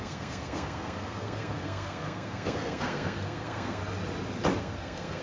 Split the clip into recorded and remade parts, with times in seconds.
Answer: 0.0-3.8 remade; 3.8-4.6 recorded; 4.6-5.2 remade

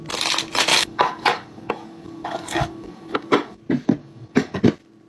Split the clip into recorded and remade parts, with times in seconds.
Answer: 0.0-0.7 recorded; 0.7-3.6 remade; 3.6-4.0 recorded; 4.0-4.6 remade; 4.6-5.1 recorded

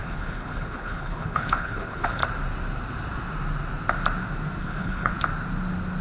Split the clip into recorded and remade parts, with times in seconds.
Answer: 0.0-2.2 remade; 2.2-4.6 recorded; 4.6-5.1 remade; 5.1-6.0 recorded

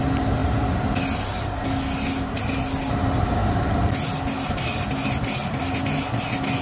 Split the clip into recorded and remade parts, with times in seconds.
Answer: 0.0-6.6 recorded